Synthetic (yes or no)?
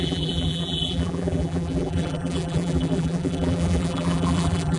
yes